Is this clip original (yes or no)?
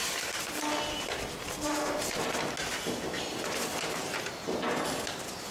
yes